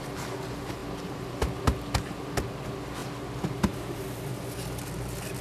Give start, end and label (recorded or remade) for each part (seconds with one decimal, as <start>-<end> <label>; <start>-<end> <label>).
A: 0.0-0.8 recorded; 0.8-1.6 remade; 1.6-5.4 recorded